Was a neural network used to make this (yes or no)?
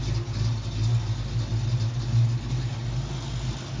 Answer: no